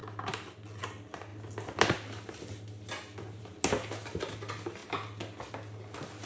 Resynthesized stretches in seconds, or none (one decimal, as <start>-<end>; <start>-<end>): none